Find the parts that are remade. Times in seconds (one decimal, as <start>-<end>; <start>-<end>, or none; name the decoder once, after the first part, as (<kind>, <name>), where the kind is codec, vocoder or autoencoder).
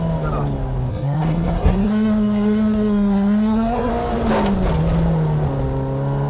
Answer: 0.9-3.9 (codec, SNAC)